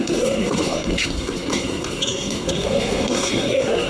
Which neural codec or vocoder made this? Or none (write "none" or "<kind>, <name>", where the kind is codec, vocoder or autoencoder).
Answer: codec, SNAC